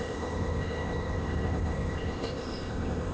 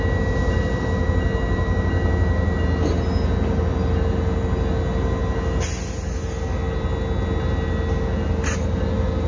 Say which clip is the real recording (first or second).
second